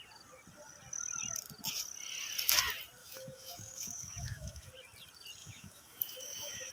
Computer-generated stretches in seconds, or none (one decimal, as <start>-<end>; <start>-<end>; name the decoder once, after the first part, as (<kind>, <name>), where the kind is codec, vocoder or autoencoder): 3.0-4.7 (autoencoder, DAC-VAE); 5.4-6.7